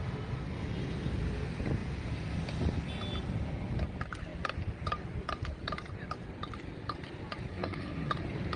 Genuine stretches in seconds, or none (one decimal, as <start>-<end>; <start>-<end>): 0.0-7.5; 8.1-8.6